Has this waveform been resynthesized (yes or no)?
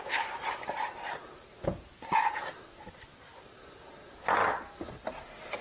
no